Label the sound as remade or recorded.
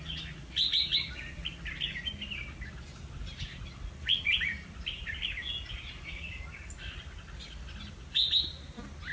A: recorded